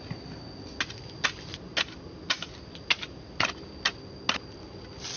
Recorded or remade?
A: recorded